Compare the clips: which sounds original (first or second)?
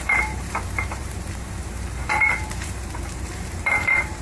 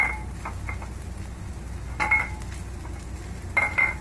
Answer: second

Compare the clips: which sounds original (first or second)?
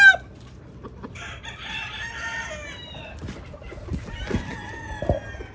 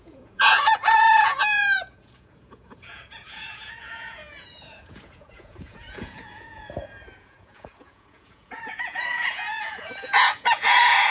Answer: first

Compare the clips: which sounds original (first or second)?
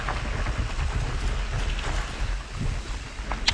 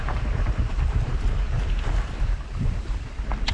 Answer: first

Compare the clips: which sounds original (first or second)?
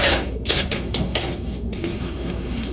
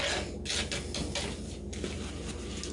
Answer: second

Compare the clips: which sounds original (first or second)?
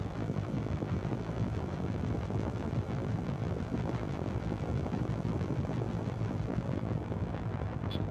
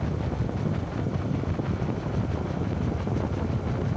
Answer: second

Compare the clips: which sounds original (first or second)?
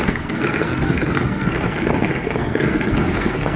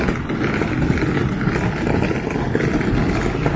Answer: second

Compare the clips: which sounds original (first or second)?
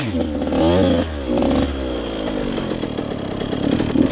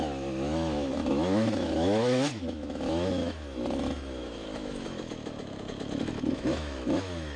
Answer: first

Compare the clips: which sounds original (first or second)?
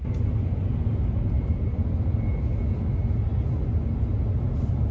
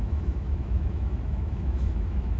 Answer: first